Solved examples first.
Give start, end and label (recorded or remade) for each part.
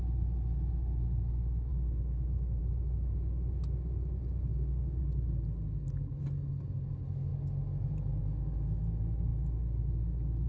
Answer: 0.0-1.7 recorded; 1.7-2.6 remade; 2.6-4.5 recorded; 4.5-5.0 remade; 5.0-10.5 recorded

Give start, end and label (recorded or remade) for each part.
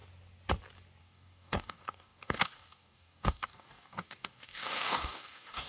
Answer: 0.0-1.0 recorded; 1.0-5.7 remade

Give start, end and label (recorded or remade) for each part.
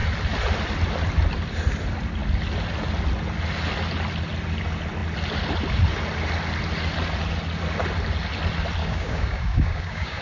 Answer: 0.0-8.8 recorded; 8.8-10.2 remade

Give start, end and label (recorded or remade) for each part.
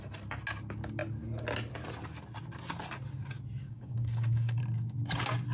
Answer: 0.0-3.6 recorded; 3.6-4.6 remade; 4.6-5.5 recorded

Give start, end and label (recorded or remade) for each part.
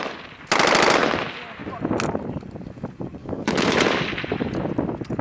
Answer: 0.0-3.2 recorded; 3.2-3.8 remade; 3.8-5.2 recorded